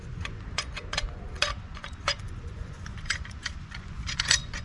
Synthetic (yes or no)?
yes